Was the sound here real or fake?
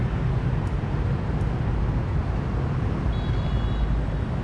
real